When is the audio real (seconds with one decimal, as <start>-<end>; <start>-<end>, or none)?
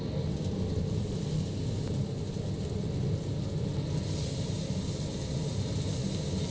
0.0-6.5